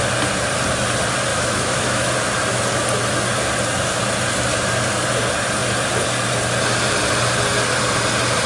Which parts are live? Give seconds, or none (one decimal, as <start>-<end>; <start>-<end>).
0.0-1.3; 2.1-8.5